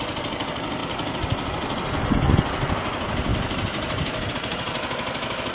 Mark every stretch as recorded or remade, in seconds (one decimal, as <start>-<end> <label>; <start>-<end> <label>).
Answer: 0.0-5.5 recorded